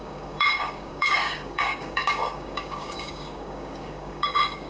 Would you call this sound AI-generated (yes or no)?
yes